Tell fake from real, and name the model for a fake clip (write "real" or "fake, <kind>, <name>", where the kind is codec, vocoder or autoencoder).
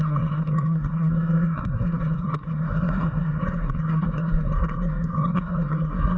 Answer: fake, codec, SNAC